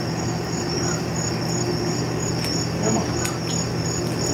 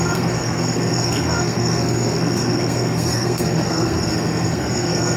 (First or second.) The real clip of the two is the first